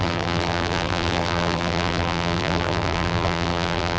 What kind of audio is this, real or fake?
fake